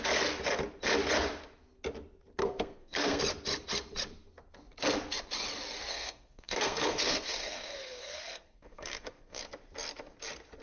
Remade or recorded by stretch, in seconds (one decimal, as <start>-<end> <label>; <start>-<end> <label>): 0.0-2.4 recorded; 2.4-3.2 remade; 3.2-5.9 recorded; 5.9-9.4 remade; 9.4-10.6 recorded